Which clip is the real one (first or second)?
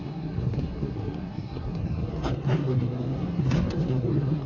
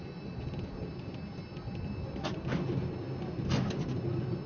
second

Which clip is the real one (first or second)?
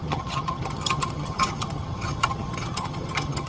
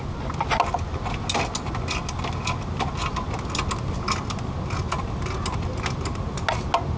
second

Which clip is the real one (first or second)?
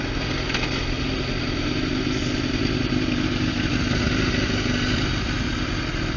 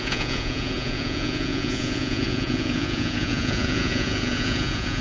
first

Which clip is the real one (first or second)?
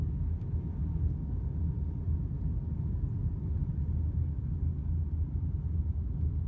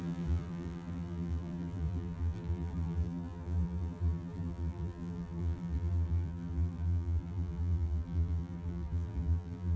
first